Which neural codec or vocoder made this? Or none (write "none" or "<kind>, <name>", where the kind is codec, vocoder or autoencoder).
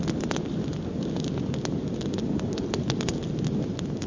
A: none